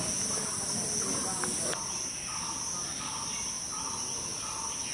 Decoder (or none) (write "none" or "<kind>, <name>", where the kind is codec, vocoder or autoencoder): none